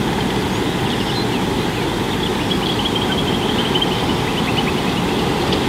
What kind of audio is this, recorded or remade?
recorded